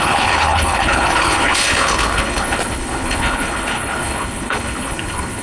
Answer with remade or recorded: remade